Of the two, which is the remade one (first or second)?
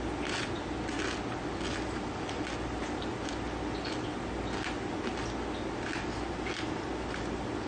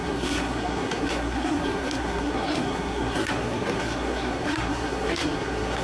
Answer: second